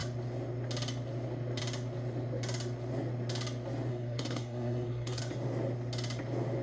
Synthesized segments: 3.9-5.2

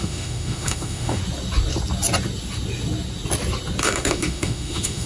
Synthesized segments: 0.0-1.2; 3.8-5.1

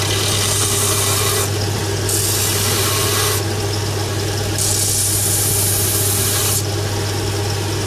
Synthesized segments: none

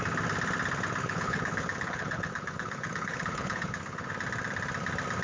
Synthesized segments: 1.0-4.1

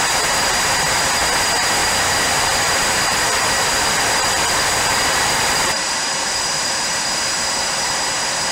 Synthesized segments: 1.8-6.7

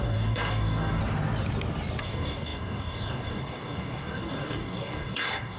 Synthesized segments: 0.0-1.0; 2.0-5.6

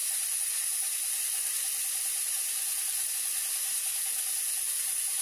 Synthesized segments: none